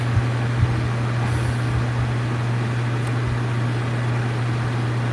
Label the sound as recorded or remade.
recorded